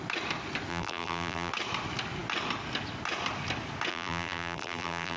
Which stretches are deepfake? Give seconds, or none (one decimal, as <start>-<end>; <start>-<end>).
0.7-1.5; 3.9-5.2